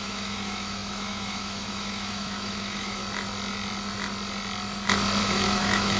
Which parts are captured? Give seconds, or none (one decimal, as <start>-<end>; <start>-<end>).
3.0-5.2